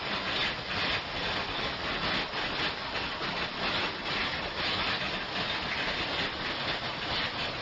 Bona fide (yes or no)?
yes